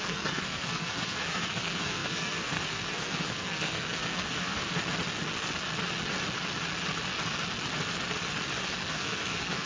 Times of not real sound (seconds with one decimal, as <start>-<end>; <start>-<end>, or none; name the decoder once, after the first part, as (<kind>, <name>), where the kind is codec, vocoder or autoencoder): 0.0-4.7 (codec, SNAC); 8.9-9.7